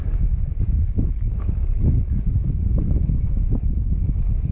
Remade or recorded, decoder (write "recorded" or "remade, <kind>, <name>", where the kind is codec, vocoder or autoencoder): remade, autoencoder, DAC-VAE